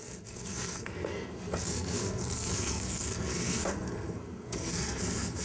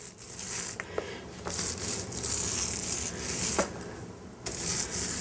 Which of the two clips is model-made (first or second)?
first